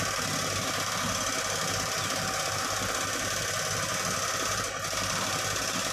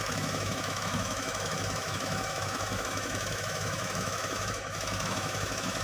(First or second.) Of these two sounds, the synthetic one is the second